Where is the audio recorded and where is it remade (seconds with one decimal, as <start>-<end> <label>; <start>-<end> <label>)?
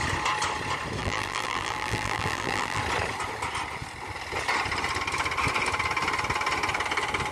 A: 0.0-1.0 recorded; 1.0-2.8 remade; 2.8-7.3 recorded